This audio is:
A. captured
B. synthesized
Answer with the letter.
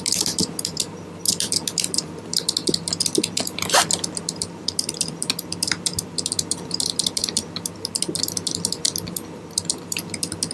B